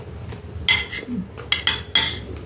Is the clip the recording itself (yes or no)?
yes